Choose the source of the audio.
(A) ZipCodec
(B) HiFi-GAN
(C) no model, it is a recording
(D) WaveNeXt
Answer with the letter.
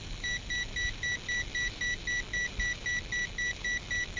C